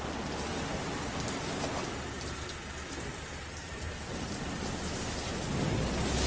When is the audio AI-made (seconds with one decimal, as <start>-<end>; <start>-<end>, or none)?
3.1-4.4

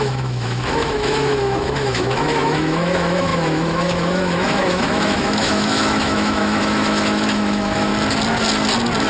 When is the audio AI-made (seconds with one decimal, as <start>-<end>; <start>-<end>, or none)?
0.0-7.9

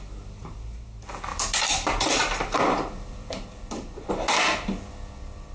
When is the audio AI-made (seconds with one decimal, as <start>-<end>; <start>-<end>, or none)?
1.3-4.1

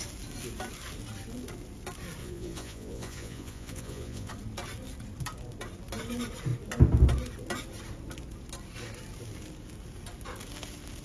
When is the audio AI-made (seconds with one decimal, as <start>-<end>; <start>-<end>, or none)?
2.2-4.3

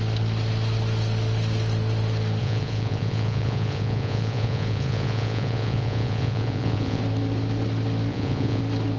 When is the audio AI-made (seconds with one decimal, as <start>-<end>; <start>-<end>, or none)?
2.4-7.0; 8.1-8.6

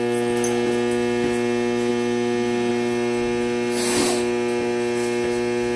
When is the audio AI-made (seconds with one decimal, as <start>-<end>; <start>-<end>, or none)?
none

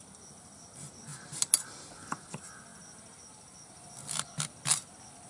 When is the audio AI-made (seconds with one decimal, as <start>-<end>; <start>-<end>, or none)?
none

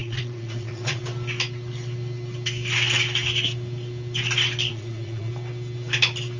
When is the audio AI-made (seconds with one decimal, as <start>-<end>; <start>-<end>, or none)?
0.0-1.0; 4.7-5.3